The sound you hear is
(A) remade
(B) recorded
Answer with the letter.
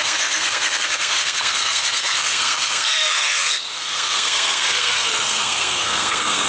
A